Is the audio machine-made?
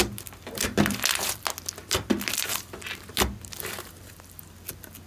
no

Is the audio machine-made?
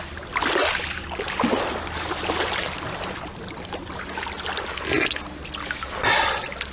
no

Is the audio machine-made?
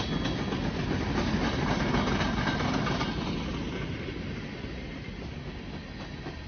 no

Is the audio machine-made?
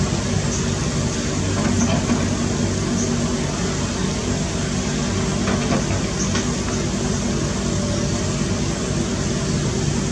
no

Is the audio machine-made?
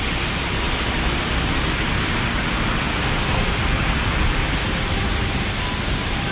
no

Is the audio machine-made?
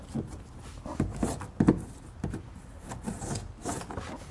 no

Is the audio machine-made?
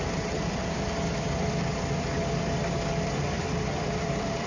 yes